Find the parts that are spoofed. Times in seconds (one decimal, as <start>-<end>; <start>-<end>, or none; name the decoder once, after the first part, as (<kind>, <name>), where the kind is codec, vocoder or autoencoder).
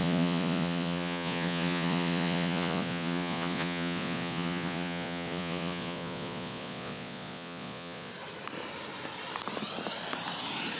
0.0-8.1 (vocoder, Vocos)